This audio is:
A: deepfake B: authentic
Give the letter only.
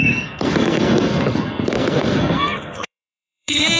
A